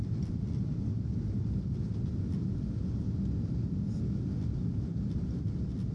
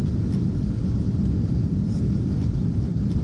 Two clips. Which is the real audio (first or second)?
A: first